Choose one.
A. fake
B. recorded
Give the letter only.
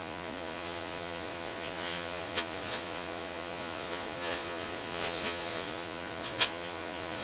A